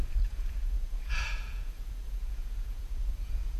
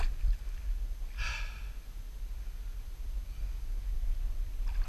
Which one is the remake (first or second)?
first